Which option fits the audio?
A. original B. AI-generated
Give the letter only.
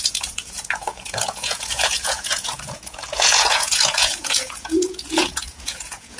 B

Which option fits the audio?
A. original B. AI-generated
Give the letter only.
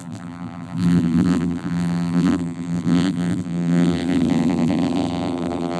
B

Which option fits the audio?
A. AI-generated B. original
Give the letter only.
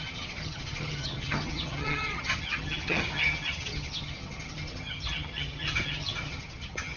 A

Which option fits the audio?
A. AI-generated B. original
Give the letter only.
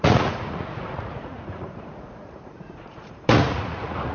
A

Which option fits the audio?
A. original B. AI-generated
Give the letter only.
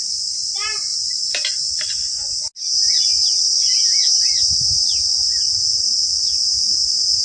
A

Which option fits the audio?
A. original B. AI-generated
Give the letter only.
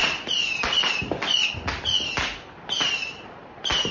A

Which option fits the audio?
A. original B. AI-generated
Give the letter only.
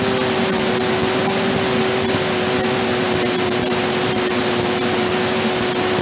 A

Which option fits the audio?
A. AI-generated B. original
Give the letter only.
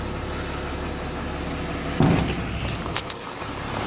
B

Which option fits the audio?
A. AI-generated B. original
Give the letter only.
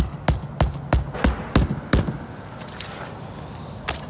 B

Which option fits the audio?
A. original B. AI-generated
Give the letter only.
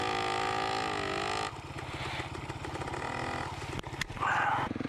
A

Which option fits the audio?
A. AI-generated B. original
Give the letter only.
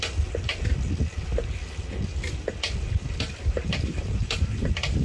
B